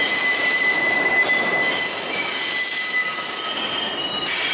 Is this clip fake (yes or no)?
no